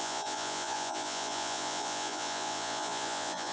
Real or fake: fake